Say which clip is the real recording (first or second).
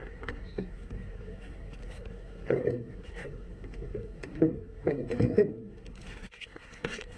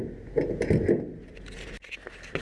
second